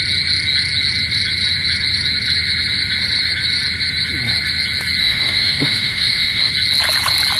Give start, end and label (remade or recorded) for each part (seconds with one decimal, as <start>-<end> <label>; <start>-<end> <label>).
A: 0.0-5.0 recorded; 5.0-6.5 remade; 6.5-7.4 recorded